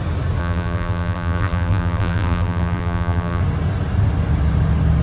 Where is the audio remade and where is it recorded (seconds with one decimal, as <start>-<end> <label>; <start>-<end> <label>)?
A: 0.0-0.4 recorded; 0.4-3.4 remade; 3.4-5.0 recorded